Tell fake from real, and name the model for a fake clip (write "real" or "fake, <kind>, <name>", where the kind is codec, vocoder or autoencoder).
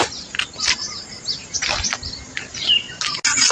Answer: real